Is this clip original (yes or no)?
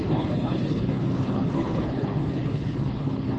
no